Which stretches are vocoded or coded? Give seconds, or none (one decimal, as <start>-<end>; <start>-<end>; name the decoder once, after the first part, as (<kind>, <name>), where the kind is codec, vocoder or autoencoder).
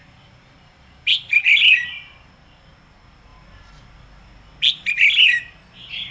0.0-1.6 (vocoder, BigVGAN v2)